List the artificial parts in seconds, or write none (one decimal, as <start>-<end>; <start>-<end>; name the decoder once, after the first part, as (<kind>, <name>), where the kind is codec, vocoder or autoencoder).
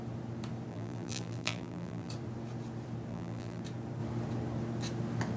0.7-2.1 (vocoder, BigVGAN v2); 3.1-3.6